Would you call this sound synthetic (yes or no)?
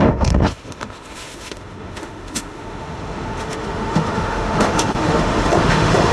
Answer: yes